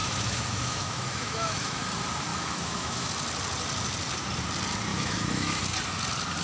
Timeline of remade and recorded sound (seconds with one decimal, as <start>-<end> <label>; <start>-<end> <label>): 0.0-1.8 remade; 1.8-2.3 recorded; 2.3-3.1 remade; 3.1-4.9 recorded; 4.9-5.6 remade; 5.6-6.4 recorded